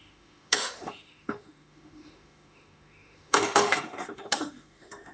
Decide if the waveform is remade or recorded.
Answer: remade